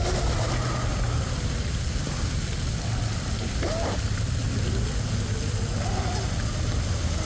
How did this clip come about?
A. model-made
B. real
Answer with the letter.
B